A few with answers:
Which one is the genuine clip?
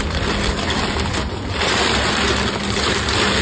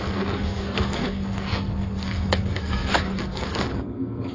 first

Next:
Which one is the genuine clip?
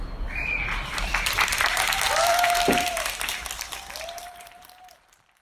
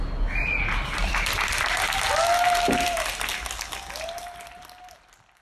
second